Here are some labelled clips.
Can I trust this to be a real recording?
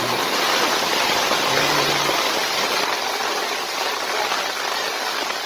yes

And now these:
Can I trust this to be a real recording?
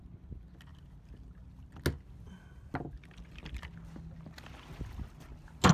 yes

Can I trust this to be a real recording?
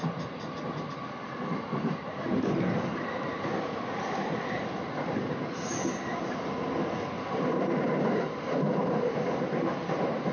yes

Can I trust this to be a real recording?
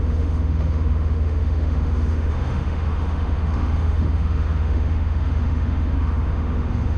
no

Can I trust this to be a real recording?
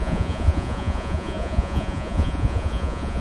no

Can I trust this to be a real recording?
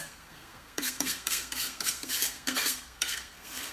no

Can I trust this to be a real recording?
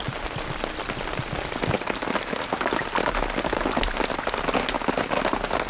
yes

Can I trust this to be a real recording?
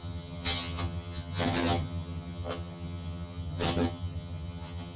no